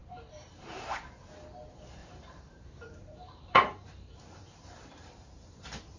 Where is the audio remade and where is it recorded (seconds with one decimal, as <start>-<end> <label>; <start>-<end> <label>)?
0.0-1.1 remade; 1.1-2.0 recorded; 2.0-5.6 remade; 5.6-6.0 recorded